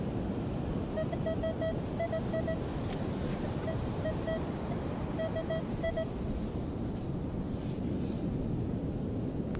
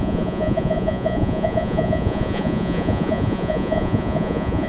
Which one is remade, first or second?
second